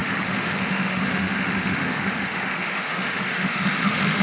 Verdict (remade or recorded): remade